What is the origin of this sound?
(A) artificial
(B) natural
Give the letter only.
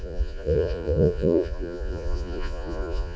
A